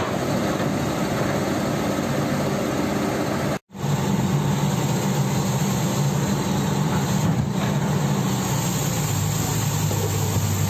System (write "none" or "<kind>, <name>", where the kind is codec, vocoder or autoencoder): none